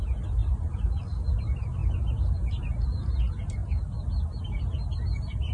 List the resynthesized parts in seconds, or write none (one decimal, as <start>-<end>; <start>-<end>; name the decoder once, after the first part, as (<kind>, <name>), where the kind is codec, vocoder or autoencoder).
none